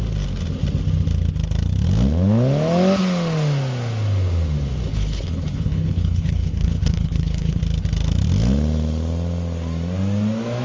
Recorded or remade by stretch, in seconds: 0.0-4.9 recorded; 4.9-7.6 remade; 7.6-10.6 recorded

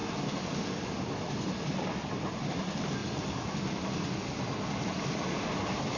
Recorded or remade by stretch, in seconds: 0.0-6.0 recorded

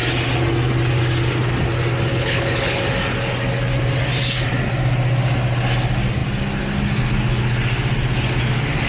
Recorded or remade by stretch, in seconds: 0.0-2.1 recorded; 2.1-2.8 remade; 2.8-8.9 recorded

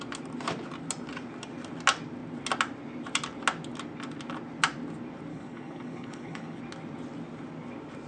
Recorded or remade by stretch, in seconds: 0.0-5.3 recorded; 5.3-6.6 remade; 6.6-8.1 recorded

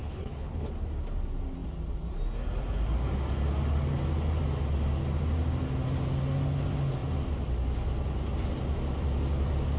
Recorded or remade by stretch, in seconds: 0.0-0.7 remade; 0.7-9.8 recorded